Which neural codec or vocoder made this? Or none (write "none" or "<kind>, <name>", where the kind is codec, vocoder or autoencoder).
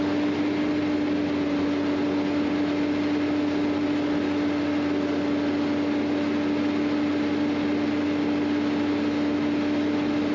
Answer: none